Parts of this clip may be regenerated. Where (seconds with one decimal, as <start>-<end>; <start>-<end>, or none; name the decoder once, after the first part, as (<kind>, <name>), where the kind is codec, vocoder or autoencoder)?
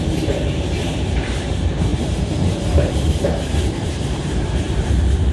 0.0-5.3 (vocoder, BigVGAN v2)